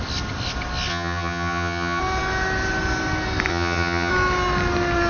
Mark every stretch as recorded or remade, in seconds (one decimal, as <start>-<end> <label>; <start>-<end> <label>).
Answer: 0.0-0.9 recorded; 0.9-2.0 remade; 2.0-3.5 recorded; 3.5-4.1 remade; 4.1-5.1 recorded